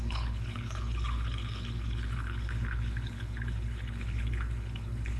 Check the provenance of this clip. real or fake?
fake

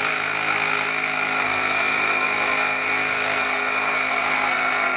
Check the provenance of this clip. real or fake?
fake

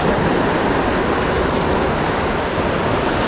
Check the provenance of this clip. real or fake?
real